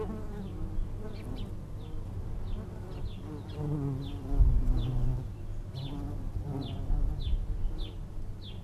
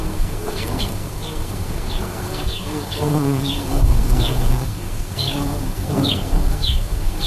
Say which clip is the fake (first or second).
second